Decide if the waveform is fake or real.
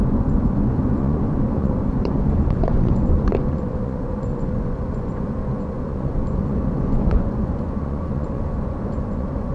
fake